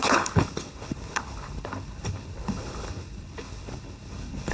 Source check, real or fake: fake